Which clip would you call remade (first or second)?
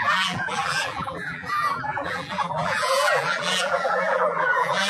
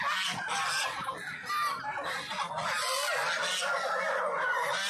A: first